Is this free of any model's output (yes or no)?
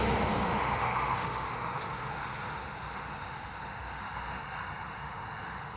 no